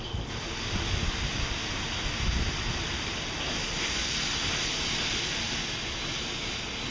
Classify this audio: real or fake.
real